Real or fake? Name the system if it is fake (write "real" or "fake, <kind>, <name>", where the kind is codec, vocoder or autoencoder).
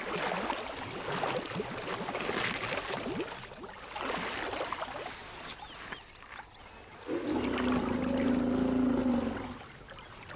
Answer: real